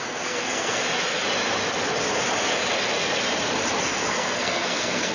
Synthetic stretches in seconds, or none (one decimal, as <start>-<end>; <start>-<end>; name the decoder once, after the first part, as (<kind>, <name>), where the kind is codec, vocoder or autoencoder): 0.0-0.8 (codec, SNAC); 3.8-5.1